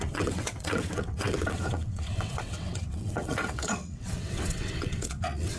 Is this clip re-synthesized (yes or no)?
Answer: yes